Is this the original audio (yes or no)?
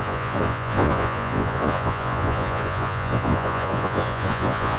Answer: no